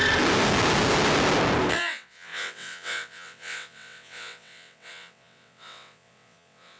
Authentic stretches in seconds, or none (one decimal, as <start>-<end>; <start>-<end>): 0.0-1.7